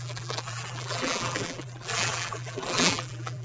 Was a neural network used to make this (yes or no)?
yes